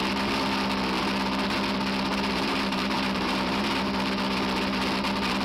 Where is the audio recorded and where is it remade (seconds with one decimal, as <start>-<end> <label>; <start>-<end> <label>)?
0.0-2.1 recorded; 2.1-3.6 remade; 3.6-5.4 recorded